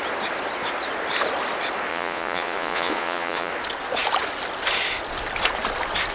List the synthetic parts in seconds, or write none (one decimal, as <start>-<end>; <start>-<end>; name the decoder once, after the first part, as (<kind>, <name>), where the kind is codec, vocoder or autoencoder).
1.9-3.5 (vocoder, Vocos)